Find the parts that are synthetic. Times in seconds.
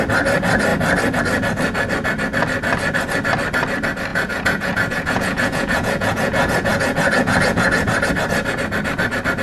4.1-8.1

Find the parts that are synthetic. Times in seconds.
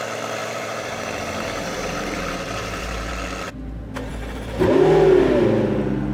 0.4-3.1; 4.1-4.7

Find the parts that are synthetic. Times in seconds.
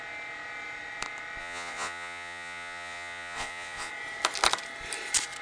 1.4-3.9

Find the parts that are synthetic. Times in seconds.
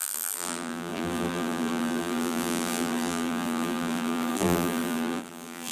0.0-5.7